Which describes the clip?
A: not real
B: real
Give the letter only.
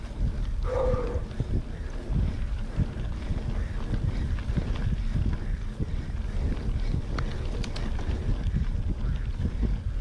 B